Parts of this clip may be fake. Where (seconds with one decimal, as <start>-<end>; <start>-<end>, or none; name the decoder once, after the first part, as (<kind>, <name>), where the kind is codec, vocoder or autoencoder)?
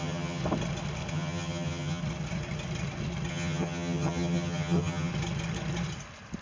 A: 0.0-0.4 (vocoder, HiFi-GAN); 1.1-2.0; 3.3-5.1